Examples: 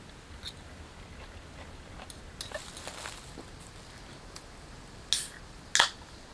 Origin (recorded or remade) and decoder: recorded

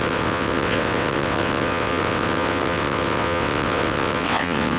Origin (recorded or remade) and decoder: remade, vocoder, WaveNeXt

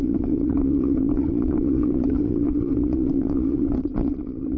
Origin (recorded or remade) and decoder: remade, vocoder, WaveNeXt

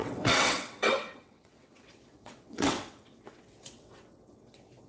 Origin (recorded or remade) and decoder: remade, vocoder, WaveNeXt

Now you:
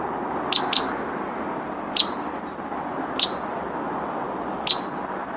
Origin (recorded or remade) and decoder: recorded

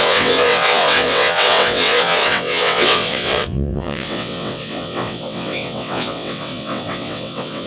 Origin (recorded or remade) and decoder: remade, vocoder, WaveNeXt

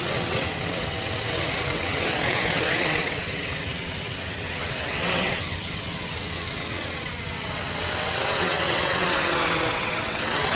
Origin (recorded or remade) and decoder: remade, vocoder, WaveNeXt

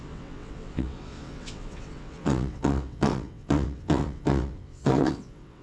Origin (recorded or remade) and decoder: remade, vocoder, WaveNeXt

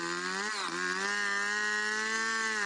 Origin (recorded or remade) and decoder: recorded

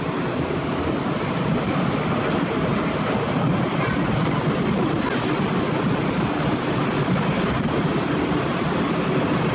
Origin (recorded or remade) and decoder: recorded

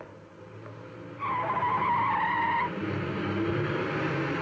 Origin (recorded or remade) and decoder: recorded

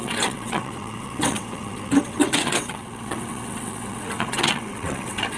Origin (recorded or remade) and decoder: remade, vocoder, WaveNeXt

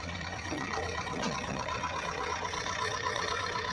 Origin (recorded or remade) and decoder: remade, vocoder, WaveNeXt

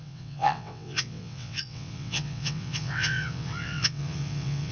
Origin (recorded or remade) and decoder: remade, vocoder, WaveNeXt